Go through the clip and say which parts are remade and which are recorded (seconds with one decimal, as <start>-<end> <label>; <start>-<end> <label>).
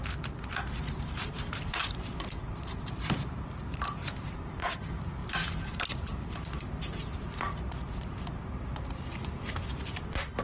0.0-0.8 recorded; 0.8-4.8 remade; 4.8-5.2 recorded; 5.2-8.4 remade; 8.4-10.4 recorded